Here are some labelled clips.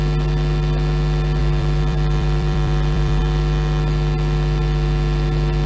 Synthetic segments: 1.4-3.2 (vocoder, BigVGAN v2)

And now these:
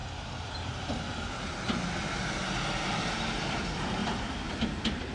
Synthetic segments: 3.1-5.1 (vocoder, BigVGAN v2)

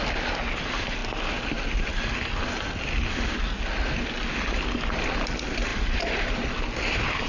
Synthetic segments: 5.7-6.5 (vocoder, BigVGAN v2)

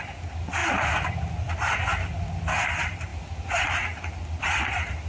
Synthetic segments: none